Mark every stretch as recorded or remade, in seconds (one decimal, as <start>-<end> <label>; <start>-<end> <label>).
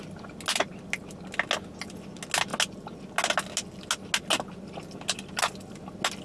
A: 0.0-6.2 recorded